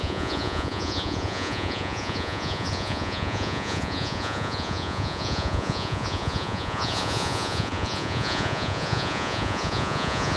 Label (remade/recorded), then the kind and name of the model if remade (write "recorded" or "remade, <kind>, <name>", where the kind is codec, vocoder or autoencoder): remade, vocoder, Vocos